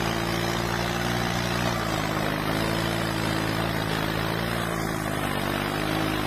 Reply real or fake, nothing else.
real